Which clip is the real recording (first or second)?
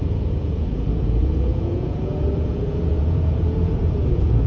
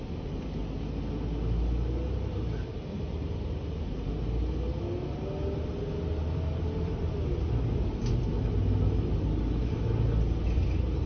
second